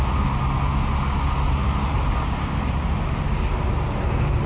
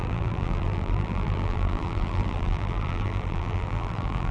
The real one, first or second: first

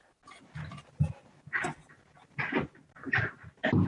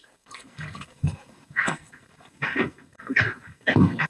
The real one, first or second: first